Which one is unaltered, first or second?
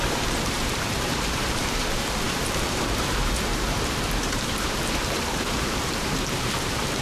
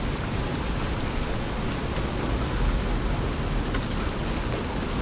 second